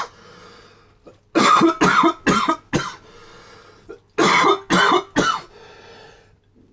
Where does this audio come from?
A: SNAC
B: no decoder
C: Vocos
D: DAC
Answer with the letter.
B